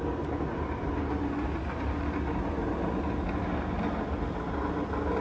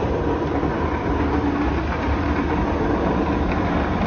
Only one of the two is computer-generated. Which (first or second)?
second